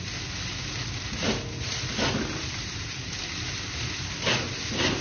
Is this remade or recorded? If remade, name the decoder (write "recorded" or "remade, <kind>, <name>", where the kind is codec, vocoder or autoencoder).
recorded